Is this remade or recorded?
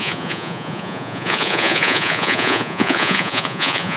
remade